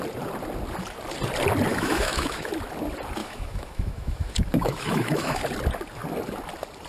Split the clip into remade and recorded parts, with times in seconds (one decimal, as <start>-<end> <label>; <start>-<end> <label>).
0.0-1.7 recorded; 1.7-2.5 remade; 2.5-3.2 recorded; 3.2-5.4 remade; 5.4-6.9 recorded